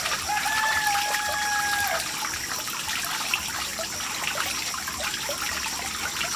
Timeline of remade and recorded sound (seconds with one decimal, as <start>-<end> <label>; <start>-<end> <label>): 0.0-6.4 recorded